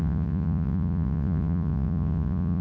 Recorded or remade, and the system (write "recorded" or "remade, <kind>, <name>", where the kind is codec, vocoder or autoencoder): remade, vocoder, Vocos